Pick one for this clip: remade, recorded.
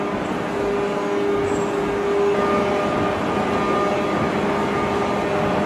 recorded